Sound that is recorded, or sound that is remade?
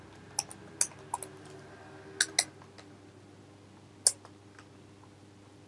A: recorded